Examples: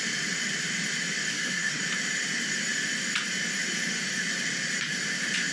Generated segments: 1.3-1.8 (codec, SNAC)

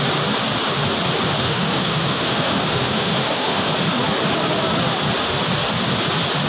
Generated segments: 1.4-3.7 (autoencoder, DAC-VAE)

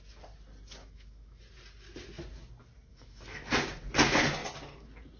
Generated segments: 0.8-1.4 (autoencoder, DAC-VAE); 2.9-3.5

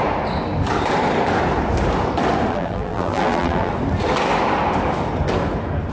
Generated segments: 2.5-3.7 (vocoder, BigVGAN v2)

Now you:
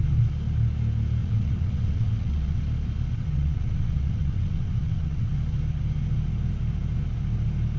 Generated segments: 1.2-2.6 (vocoder, WaveNeXt); 3.1-5.3

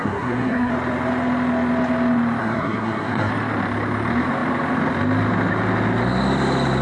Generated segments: 0.0-0.7 (codec, SNAC); 2.4-3.3

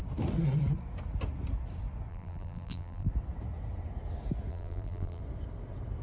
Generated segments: 2.1-3.1 (vocoder, BigVGAN v2); 4.5-5.2

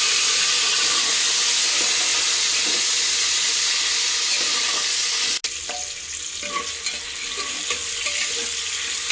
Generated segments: none